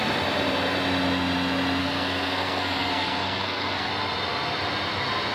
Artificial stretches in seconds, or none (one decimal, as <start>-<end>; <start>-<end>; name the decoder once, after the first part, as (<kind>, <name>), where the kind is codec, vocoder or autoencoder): 1.8-3.9 (codec, SNAC)